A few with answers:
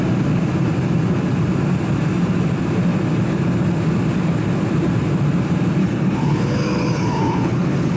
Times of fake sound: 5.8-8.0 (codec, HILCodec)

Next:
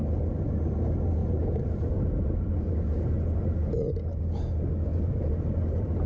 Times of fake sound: 1.2-2.7 (vocoder, BigVGAN v2); 4.9-6.1

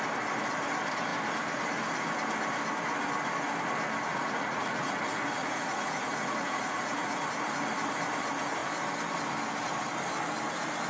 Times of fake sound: 4.1-5.0 (vocoder, Vocos); 5.4-7.3

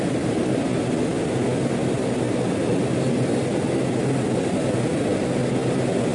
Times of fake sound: none

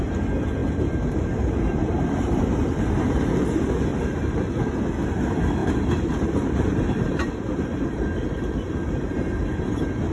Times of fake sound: 0.6-3.5 (vocoder, BigVGAN v2); 3.9-4.7; 5.6-9.6

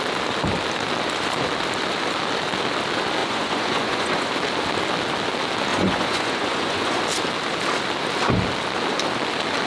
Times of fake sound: 3.2-4.3 (vocoder, Vocos); 5.7-7.0